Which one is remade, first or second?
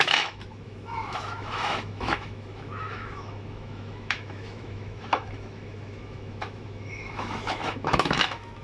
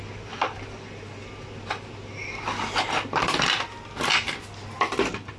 first